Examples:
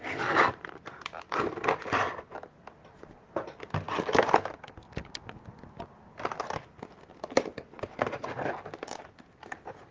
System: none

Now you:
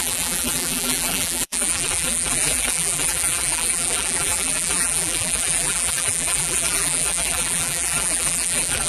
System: vocoder, BigVGAN v2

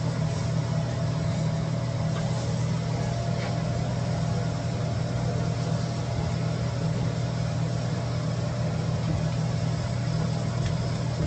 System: none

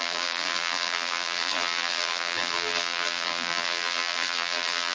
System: vocoder, BigVGAN v2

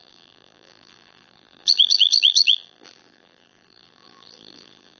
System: vocoder, BigVGAN v2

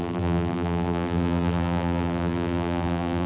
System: vocoder, BigVGAN v2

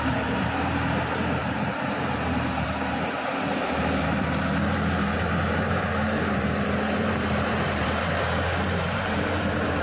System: vocoder, BigVGAN v2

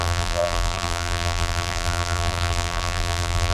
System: vocoder, BigVGAN v2